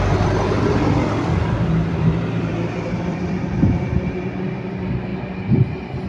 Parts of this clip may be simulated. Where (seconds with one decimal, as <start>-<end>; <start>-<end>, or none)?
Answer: 0.0-5.1